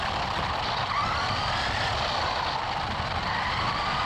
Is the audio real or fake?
real